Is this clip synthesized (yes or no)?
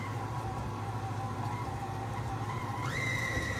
yes